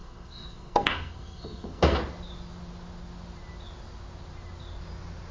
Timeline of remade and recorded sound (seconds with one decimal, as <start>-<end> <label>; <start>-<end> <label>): 0.0-2.0 remade; 2.0-5.3 recorded